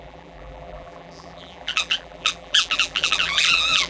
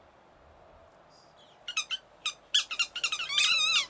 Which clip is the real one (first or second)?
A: second